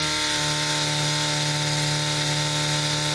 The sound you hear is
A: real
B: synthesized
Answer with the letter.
A